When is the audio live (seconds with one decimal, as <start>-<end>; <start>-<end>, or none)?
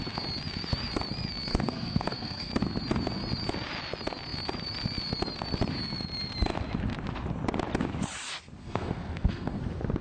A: 0.0-1.5; 2.5-8.6; 9.6-10.0